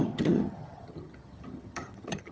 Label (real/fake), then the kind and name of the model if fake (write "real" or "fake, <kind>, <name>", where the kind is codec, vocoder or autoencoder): fake, vocoder, HiFi-GAN